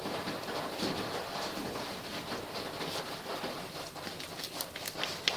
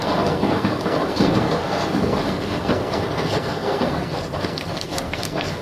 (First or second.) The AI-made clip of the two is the second